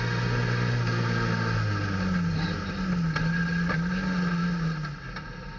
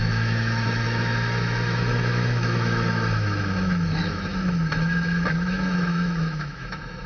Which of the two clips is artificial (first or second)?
second